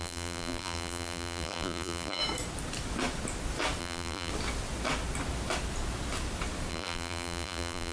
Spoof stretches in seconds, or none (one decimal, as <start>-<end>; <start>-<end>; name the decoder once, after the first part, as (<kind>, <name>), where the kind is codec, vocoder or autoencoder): 0.0-2.2 (vocoder, BigVGAN v2); 3.8-4.3; 6.7-7.9

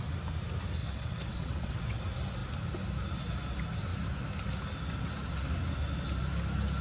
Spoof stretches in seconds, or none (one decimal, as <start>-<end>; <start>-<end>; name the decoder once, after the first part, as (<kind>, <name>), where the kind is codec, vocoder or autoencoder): 0.8-2.0 (vocoder, WaveNeXt)

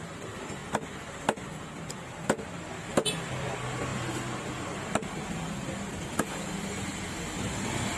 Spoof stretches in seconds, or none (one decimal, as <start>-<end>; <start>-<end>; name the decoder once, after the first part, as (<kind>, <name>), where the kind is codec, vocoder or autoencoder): none